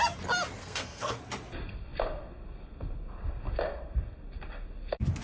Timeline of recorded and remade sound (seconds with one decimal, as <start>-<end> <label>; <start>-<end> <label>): 0.0-0.6 recorded; 0.6-1.2 remade; 1.2-5.2 recorded